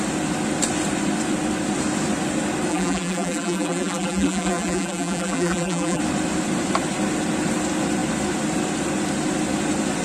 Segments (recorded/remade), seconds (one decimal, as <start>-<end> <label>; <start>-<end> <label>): 0.0-2.7 recorded; 2.7-6.0 remade; 6.0-10.0 recorded